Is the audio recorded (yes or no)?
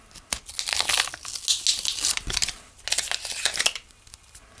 yes